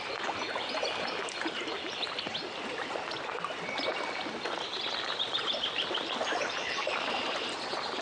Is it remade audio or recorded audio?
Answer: remade